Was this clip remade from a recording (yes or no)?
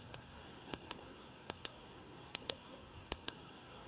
yes